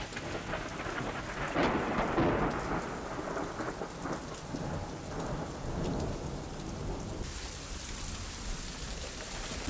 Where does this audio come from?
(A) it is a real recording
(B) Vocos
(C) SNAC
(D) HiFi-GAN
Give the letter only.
A